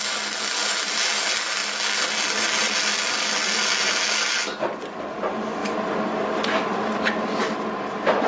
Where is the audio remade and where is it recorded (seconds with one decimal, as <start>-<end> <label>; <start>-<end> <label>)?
0.0-8.3 recorded